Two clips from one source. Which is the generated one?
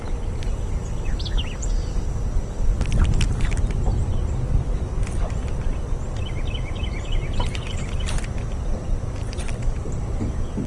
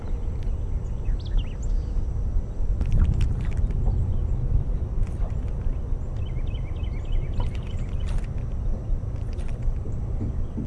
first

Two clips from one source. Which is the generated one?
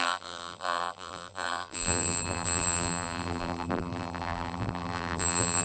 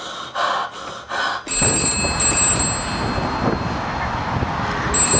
first